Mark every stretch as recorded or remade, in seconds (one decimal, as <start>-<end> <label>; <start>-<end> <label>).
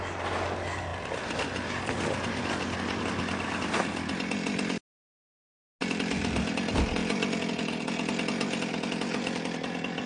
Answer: 0.0-10.1 recorded